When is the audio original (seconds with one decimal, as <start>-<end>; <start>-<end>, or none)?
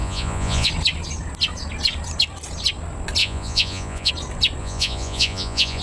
0.7-3.2; 4.1-4.6